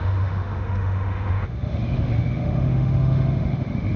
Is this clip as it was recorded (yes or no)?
no